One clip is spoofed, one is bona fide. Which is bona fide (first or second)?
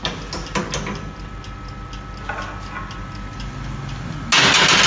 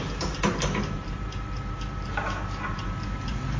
first